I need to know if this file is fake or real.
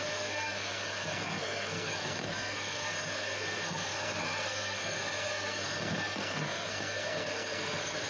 fake